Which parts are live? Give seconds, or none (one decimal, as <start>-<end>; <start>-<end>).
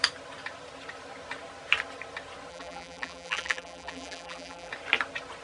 0.0-2.5; 4.7-5.4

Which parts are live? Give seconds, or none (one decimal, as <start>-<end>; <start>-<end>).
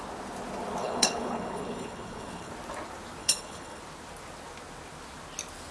0.0-0.8; 2.5-3.2; 3.8-5.7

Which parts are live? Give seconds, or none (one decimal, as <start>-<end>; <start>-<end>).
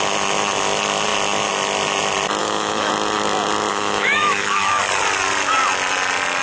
0.0-2.4; 2.9-3.7; 4.8-6.4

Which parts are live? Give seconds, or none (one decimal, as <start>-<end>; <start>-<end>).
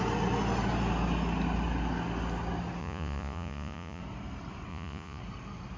0.0-2.8; 4.0-4.7; 5.2-5.8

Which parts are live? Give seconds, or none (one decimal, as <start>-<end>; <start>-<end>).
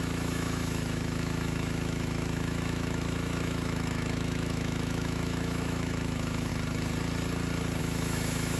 6.5-7.8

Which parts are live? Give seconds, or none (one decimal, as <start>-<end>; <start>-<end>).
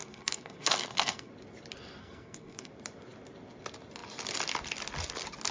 1.3-2.0; 2.7-5.5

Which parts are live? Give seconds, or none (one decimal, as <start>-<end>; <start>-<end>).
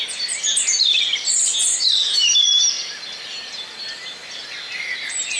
0.0-5.4